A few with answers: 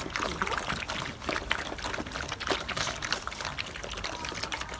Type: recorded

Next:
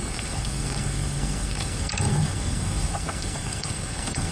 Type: remade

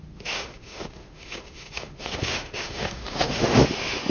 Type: remade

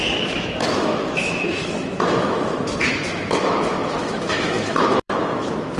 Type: remade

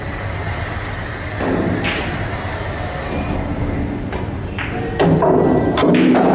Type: recorded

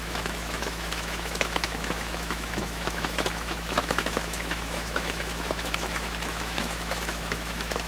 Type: remade